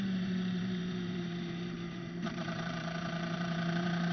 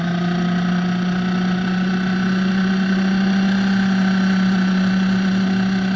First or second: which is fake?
first